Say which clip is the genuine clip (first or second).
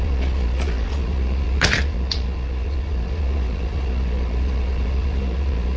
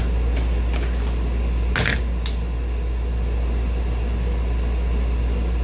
second